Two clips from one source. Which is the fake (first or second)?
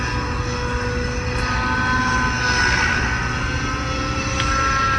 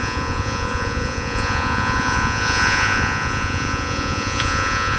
second